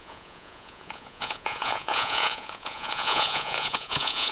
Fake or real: fake